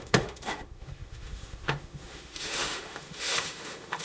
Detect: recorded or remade remade